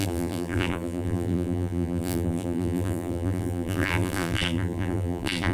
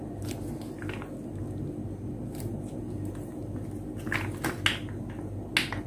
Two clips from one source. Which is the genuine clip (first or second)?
second